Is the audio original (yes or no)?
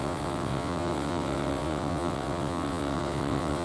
no